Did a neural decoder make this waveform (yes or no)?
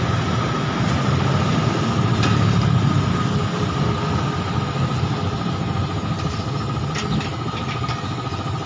no